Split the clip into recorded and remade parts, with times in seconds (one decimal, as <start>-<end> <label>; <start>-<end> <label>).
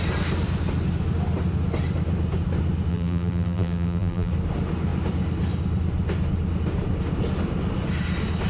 0.0-2.9 recorded; 2.9-4.3 remade; 4.3-8.5 recorded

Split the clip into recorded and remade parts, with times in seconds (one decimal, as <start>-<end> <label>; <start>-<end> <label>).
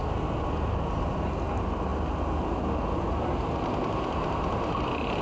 0.0-5.2 recorded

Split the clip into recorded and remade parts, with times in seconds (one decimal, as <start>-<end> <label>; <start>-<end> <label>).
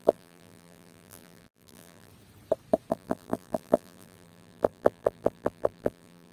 0.0-2.1 remade; 2.1-2.9 recorded; 2.9-6.3 remade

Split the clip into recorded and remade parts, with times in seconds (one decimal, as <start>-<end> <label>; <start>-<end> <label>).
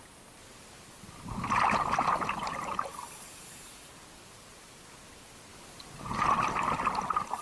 0.0-7.4 recorded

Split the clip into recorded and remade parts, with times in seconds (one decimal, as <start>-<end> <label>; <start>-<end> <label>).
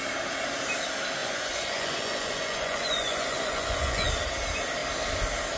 0.0-1.2 recorded; 1.2-4.1 remade; 4.1-5.6 recorded